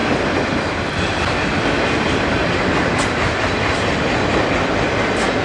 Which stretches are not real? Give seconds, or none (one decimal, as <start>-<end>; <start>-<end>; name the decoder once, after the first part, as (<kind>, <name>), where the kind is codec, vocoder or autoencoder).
none